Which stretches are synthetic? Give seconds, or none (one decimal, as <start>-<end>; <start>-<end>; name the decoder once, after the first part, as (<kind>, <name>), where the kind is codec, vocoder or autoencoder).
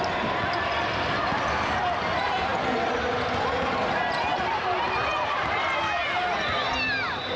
2.5-3.1 (vocoder, BigVGAN v2); 5.1-5.8